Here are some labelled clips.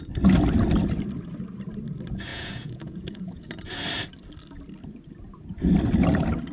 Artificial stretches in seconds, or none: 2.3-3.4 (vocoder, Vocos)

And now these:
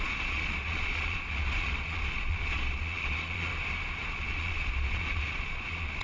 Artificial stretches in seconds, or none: 0.0-3.5 (vocoder, Vocos); 4.1-6.0

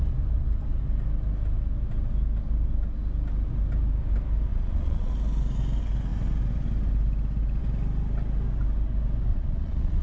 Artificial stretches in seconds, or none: 4.5-5.1 (vocoder, Vocos); 9.3-10.0

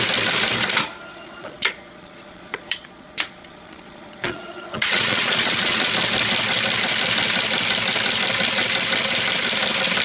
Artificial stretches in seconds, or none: 1.1-5.9 (vocoder, Vocos)

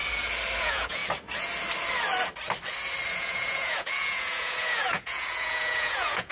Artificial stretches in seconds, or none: 0.6-1.0 (vocoder, Vocos); 3.1-6.3

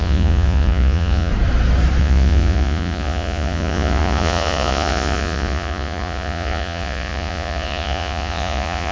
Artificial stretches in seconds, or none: 0.0-1.3 (vocoder, Vocos); 2.0-8.9

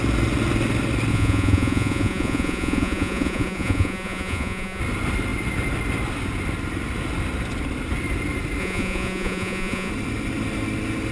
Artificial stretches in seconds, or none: 1.1-4.8 (vocoder, Vocos); 8.6-9.9

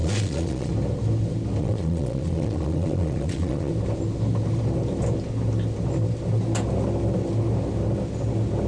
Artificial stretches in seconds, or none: 0.0-0.7 (vocoder, Vocos); 1.6-3.7